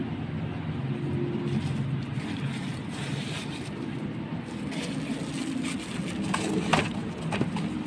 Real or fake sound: real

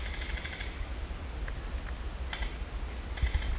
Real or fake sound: real